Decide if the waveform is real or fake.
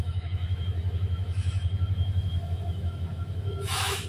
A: fake